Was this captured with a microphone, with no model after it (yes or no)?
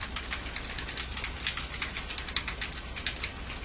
yes